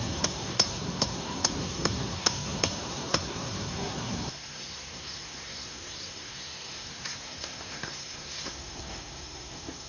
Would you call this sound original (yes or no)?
no